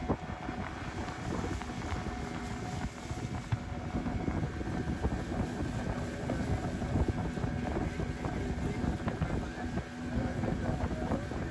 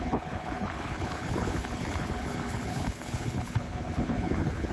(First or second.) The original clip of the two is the first